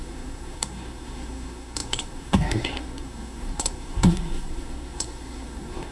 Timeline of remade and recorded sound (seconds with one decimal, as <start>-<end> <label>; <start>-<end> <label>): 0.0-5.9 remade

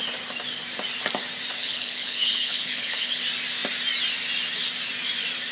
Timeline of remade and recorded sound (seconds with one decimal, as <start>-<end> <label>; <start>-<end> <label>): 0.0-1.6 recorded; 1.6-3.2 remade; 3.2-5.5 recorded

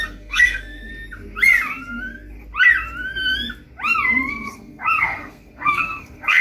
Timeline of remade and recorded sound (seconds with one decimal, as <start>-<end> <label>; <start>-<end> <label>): 0.0-0.9 remade; 0.9-4.3 recorded; 4.3-6.4 remade

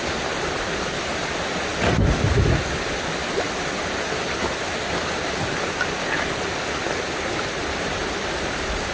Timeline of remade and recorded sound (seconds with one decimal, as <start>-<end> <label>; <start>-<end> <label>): 0.0-8.9 recorded

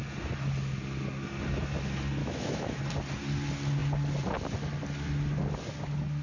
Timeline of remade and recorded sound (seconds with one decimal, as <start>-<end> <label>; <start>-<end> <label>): 0.0-2.2 recorded; 2.2-2.8 remade; 2.8-6.2 recorded

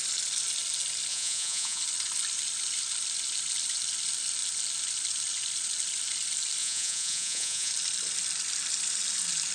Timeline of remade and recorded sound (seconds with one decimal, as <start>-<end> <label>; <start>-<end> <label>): 0.0-1.1 recorded; 1.1-1.8 remade; 1.8-6.6 recorded; 6.6-7.7 remade; 7.7-9.5 recorded